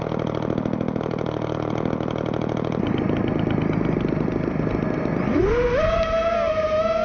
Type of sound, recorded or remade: recorded